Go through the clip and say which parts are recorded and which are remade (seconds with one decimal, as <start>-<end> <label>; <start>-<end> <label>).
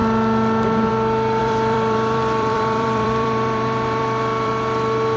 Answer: 0.0-1.4 recorded; 1.4-4.5 remade; 4.5-5.2 recorded